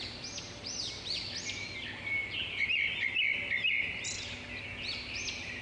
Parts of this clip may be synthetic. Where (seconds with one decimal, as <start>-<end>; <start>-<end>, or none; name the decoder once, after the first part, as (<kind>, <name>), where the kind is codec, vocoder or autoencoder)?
none